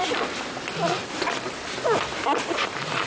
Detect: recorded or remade recorded